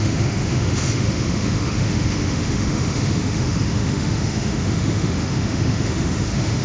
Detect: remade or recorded remade